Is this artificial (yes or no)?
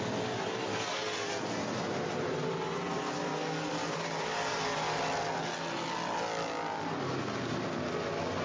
no